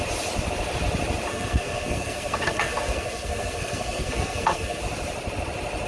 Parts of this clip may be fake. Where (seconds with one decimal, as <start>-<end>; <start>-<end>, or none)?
1.3-4.8